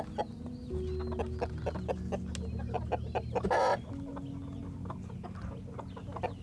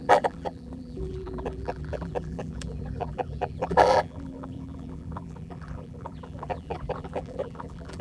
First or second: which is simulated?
second